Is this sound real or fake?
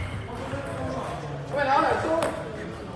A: real